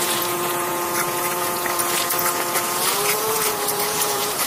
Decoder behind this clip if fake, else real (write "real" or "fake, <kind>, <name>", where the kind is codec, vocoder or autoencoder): fake, vocoder, Vocos